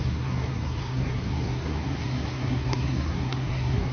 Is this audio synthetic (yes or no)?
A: yes